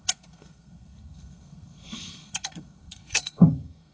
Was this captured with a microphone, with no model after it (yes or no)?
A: no